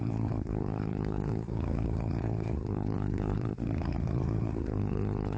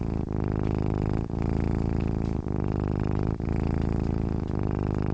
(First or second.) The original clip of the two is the second